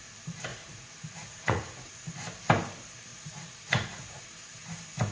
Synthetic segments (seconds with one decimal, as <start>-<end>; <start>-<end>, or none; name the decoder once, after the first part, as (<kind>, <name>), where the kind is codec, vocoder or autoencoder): 0.5-1.9 (vocoder, Vocos); 3.1-4.2